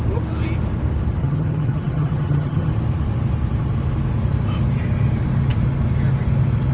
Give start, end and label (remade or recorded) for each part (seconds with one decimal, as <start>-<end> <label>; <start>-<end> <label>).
0.0-1.2 recorded; 1.2-2.7 remade; 2.7-6.7 recorded